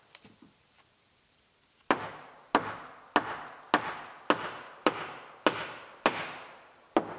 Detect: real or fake real